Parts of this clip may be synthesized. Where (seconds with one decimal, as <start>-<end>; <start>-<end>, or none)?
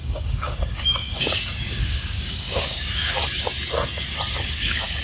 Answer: 0.0-3.2; 4.3-5.0